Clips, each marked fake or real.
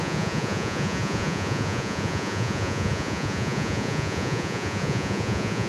fake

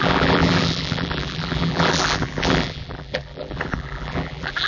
fake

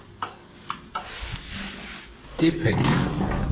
real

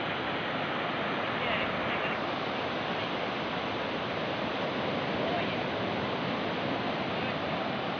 real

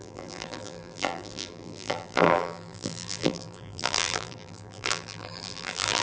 fake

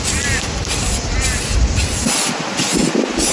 real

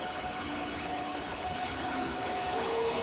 fake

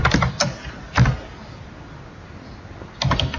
real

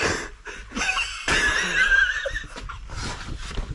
real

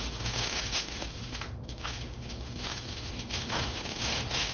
fake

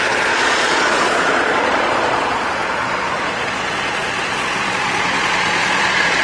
fake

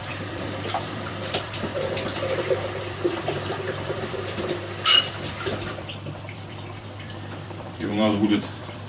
fake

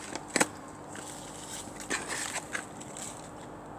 real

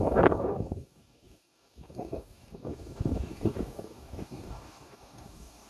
fake